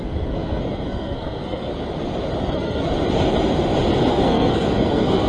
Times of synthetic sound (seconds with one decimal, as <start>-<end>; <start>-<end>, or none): 0.0-1.7; 2.4-2.9; 4.1-5.3